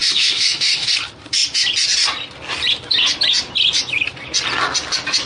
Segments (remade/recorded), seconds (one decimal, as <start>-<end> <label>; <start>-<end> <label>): 0.0-0.9 remade; 0.9-5.3 recorded